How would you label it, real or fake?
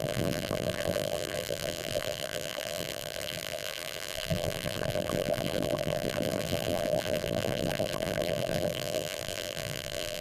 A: fake